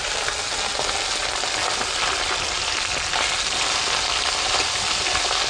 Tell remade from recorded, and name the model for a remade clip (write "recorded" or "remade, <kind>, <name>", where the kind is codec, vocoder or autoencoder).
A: recorded